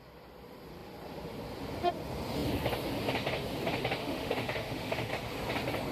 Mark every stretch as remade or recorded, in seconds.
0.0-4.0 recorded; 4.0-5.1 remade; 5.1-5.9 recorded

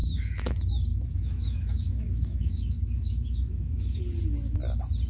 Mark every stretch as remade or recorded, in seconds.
0.0-0.5 remade; 0.5-0.9 recorded; 0.9-4.0 remade; 4.0-5.1 recorded

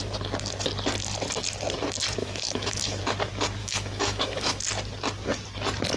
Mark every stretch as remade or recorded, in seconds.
0.0-2.2 recorded; 2.2-3.0 remade; 3.0-3.6 recorded; 3.6-4.6 remade; 4.6-6.0 recorded

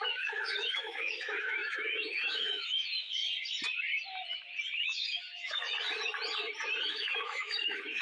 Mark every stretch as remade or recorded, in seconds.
0.0-3.2 remade; 3.2-4.8 recorded; 4.8-5.7 remade; 5.7-6.9 recorded; 6.9-8.0 remade

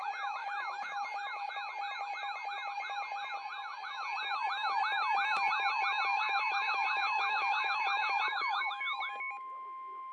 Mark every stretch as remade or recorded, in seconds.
0.0-0.4 recorded; 0.4-1.5 remade; 1.5-6.1 recorded; 6.1-9.0 remade; 9.0-10.1 recorded

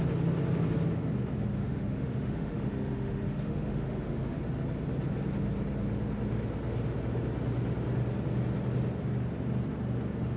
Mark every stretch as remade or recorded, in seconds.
0.0-1.6 recorded; 1.6-4.3 remade; 4.3-10.4 recorded